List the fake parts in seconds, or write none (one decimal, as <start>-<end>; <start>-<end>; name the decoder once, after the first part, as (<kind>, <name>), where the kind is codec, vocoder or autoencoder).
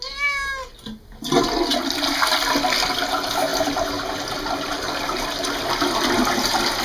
3.5-4.9 (vocoder, BigVGAN v2)